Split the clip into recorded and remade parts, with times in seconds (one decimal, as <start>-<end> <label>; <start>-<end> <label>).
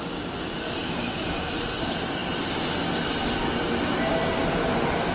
0.0-0.8 recorded; 0.8-1.5 remade; 1.5-5.1 recorded